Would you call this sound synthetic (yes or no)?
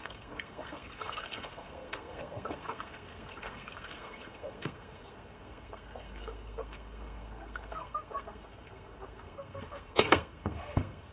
yes